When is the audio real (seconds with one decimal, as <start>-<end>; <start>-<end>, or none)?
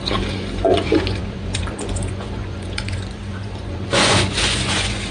none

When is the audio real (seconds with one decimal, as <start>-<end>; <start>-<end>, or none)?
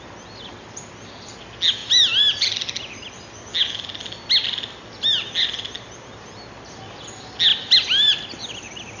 0.0-7.5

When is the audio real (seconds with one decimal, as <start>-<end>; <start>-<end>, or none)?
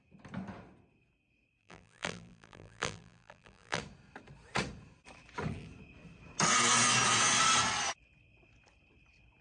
0.0-1.6; 3.8-9.4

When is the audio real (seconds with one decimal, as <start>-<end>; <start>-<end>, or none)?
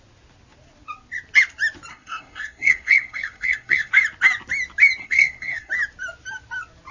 0.0-1.9; 3.9-5.0; 5.7-6.9